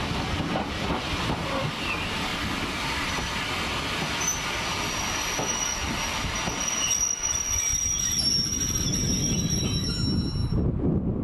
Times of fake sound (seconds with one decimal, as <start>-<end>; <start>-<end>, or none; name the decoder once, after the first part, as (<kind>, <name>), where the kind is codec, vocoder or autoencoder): none